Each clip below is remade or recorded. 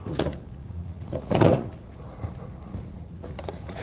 remade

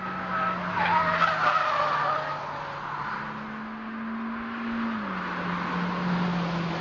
recorded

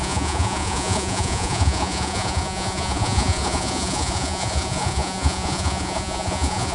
remade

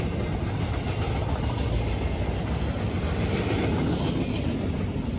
recorded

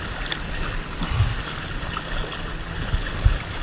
recorded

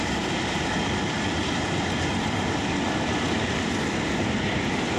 remade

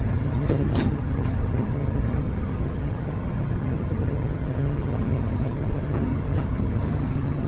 remade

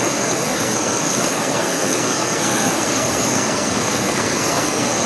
remade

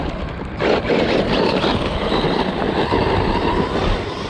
remade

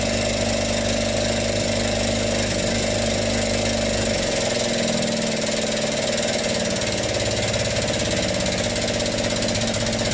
recorded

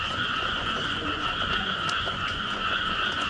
remade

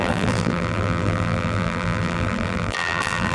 remade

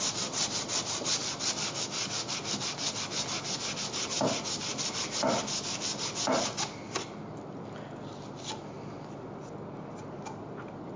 recorded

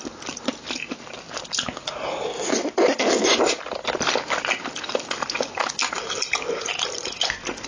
recorded